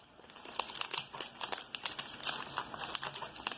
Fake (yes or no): no